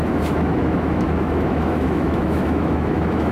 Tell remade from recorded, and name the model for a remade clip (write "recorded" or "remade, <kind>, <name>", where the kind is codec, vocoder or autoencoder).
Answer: remade, autoencoder, DAC-VAE